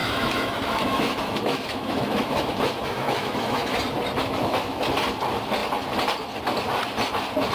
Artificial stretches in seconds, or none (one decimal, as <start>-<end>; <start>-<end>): 0.0-3.8; 4.2-4.8